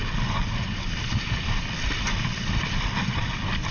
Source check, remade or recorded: recorded